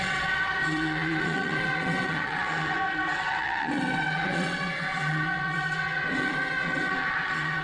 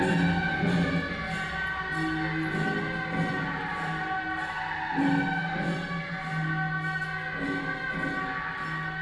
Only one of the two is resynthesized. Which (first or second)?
first